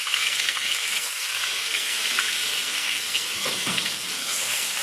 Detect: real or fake fake